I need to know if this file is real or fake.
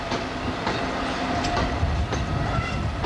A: real